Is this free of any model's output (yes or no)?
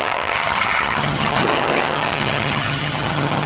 no